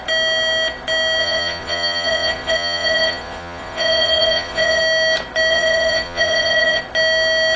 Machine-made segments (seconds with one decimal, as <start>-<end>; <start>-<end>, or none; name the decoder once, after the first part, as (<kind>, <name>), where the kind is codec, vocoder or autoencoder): 1.2-4.8 (vocoder, Vocos); 5.5-6.8